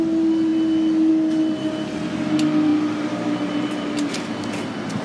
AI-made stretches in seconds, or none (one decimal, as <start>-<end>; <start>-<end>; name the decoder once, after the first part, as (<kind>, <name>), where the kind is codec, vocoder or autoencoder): none